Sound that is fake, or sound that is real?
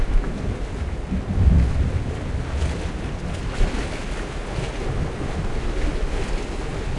real